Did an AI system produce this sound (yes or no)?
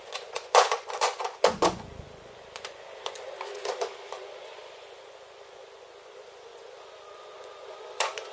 yes